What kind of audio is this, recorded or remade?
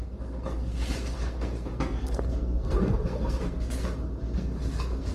remade